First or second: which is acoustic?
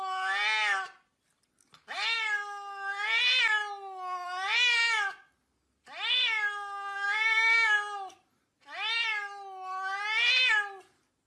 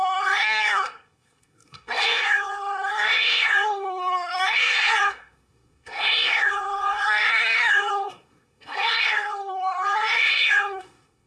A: first